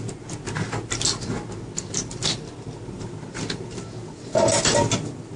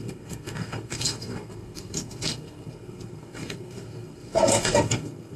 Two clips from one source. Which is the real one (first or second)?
first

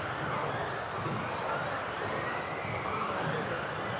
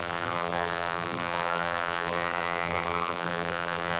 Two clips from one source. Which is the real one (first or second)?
first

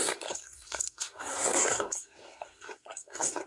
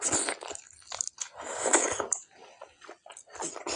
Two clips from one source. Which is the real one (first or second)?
second